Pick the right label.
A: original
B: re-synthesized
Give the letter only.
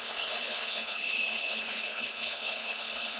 B